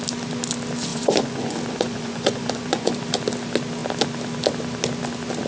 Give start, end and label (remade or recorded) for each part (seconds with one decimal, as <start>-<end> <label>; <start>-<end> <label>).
0.0-0.9 recorded; 0.9-2.9 remade; 2.9-5.5 recorded